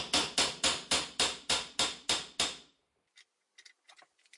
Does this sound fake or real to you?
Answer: real